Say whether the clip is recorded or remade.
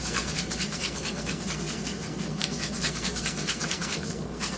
remade